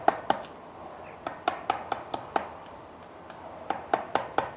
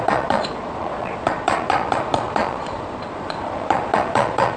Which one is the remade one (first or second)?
second